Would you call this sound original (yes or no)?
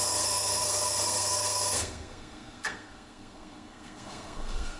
no